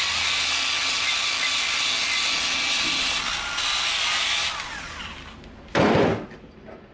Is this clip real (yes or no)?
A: yes